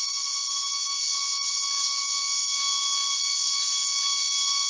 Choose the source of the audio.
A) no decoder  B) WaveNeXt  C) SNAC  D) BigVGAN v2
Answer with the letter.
A